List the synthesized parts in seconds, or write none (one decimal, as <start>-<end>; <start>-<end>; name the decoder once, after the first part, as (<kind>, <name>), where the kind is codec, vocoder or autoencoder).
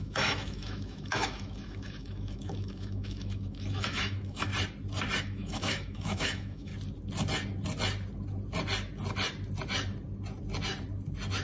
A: 0.0-4.5 (autoencoder, DAC-VAE); 5.2-6.7